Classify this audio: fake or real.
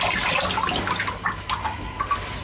real